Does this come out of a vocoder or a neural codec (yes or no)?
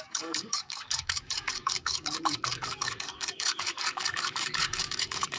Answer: yes